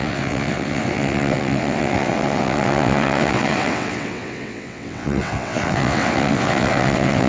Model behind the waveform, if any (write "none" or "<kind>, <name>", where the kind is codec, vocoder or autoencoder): vocoder, WaveNeXt